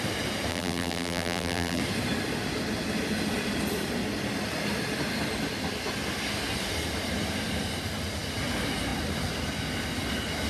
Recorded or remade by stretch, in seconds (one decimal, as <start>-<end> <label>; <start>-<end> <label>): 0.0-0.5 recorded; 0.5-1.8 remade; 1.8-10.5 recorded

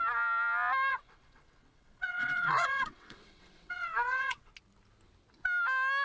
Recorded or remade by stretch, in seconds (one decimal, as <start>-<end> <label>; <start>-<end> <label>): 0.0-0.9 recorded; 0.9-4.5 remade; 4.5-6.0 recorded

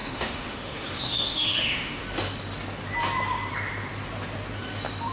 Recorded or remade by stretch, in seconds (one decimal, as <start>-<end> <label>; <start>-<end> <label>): 0.0-2.0 remade; 2.0-5.1 recorded